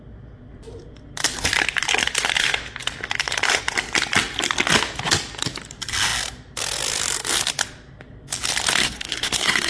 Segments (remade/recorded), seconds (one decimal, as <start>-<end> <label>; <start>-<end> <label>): 0.0-8.8 recorded; 8.8-9.7 remade